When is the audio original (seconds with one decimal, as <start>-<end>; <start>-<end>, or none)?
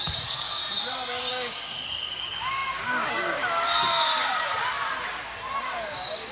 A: 0.6-1.3; 4.1-5.6